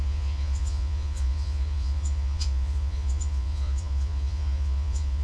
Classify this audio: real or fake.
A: fake